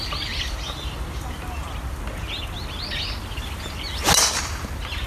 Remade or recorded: recorded